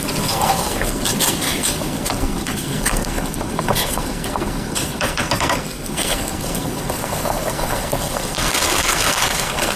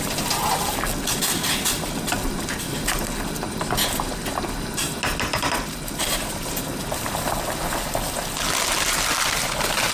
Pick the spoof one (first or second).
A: first